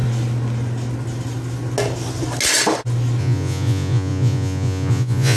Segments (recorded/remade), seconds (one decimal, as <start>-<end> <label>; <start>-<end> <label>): 0.0-3.2 recorded; 3.2-5.4 remade